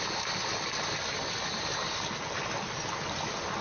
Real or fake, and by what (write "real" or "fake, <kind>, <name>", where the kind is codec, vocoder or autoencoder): real